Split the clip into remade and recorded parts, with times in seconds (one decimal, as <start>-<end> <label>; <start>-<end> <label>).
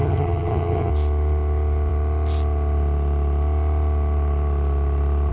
0.0-0.9 remade; 0.9-5.3 recorded